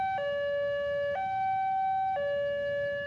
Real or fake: real